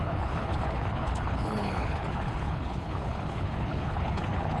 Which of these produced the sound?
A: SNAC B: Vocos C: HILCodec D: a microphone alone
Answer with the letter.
C